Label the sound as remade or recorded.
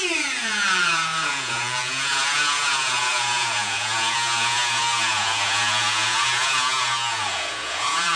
remade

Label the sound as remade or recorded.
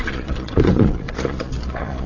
remade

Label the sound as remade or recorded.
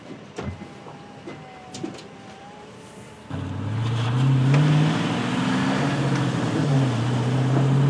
recorded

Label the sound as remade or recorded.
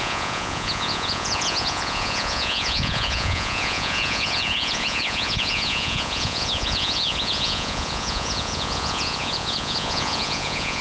remade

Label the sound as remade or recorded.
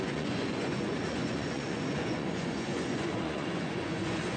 remade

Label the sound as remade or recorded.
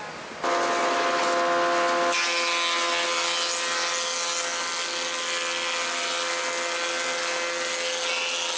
recorded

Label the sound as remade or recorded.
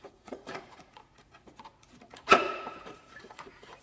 remade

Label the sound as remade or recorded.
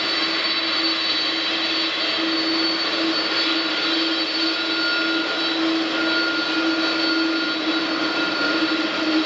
recorded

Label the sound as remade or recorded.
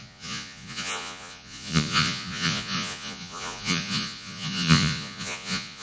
remade